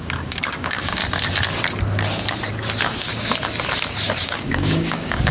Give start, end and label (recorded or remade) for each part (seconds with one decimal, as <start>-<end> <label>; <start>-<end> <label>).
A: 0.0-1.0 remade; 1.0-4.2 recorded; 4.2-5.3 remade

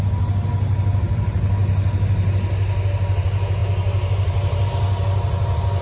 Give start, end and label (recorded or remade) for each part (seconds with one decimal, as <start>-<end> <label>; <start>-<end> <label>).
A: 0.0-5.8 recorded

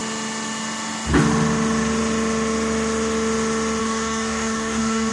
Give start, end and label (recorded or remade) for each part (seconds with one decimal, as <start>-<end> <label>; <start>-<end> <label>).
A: 0.0-3.8 recorded; 3.8-5.1 remade

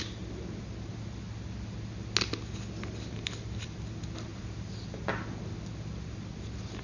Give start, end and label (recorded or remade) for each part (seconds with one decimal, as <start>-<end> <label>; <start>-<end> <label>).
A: 0.0-6.8 recorded

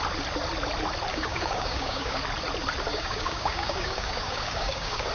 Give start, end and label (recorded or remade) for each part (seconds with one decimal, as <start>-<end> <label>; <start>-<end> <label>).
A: 0.0-1.1 recorded; 1.1-2.2 remade; 2.2-2.9 recorded; 2.9-5.1 remade